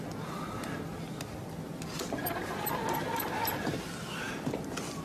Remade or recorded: recorded